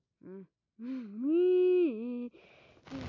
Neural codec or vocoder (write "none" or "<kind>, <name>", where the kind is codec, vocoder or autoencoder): none